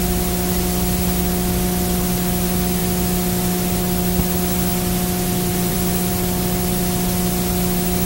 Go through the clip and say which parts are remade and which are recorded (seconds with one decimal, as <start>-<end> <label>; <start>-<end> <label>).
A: 0.0-5.5 recorded; 5.5-6.1 remade; 6.1-8.0 recorded